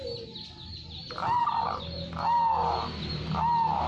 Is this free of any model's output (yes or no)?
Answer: yes